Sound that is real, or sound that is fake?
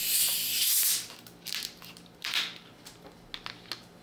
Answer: real